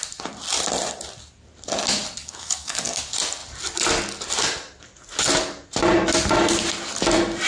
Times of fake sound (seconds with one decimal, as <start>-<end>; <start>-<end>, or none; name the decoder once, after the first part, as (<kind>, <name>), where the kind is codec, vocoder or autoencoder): 2.2-3.0 (codec, DAC)